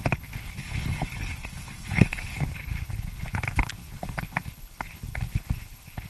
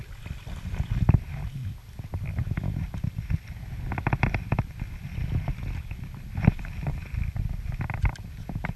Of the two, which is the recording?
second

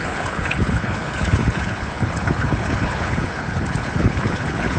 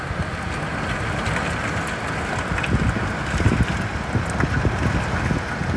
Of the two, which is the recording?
second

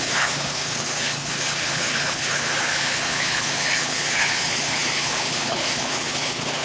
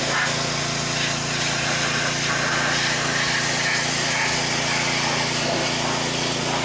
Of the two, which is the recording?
second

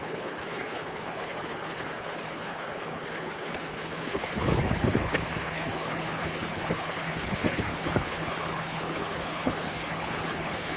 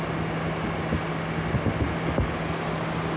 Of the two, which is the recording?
second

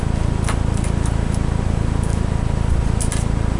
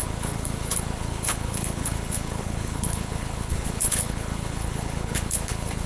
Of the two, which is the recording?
first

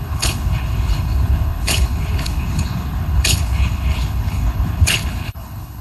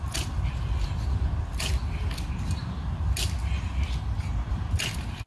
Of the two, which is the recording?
second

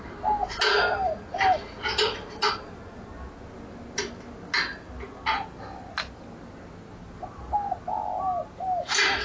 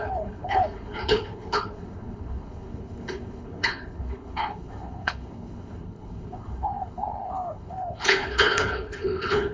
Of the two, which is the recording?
first